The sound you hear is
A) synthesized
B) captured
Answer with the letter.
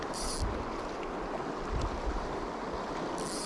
B